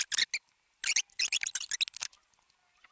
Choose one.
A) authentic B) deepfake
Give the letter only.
A